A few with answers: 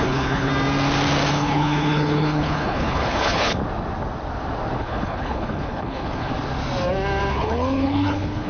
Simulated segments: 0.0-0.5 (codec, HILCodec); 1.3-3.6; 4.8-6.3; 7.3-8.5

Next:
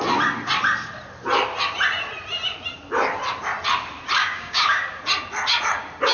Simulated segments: 4.2-5.0 (codec, DAC)

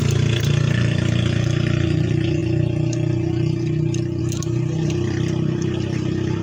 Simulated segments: 0.0-2.4 (vocoder, BigVGAN v2); 4.2-6.4

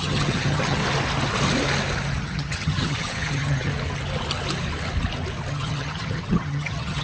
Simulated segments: 0.0-0.8 (vocoder, HiFi-GAN); 2.2-3.7; 5.5-7.0

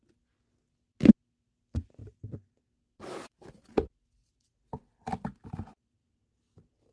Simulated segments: 2.0-2.6 (vocoder, BigVGAN v2); 4.2-4.8; 5.4-6.1